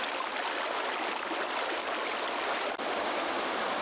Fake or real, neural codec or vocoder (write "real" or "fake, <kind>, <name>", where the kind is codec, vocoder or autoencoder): real